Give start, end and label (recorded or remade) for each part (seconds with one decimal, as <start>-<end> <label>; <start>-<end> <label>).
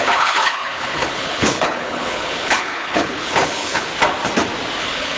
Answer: 0.0-3.9 remade; 3.9-4.8 recorded; 4.8-5.2 remade